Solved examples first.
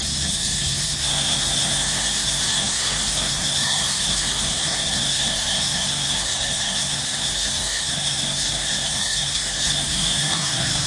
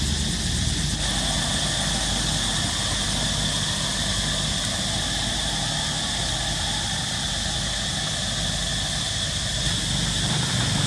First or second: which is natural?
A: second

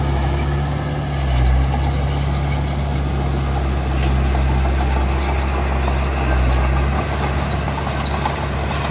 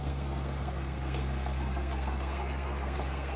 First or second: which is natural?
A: first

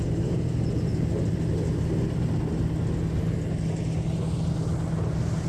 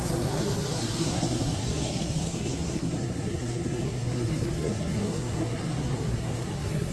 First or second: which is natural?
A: first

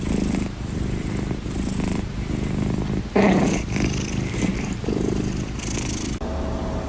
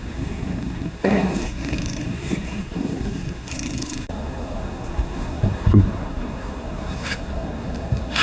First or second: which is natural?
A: first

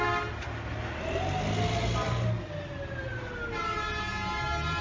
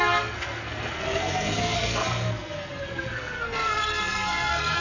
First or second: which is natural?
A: first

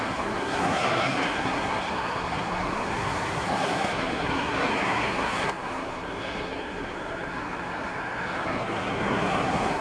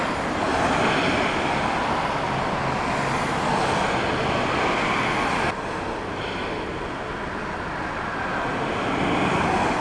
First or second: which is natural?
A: second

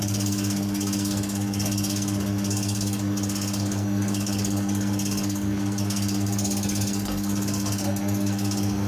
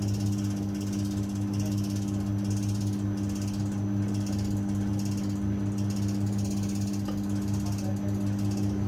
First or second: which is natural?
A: second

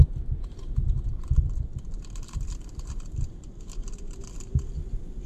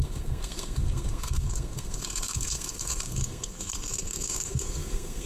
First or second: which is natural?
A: first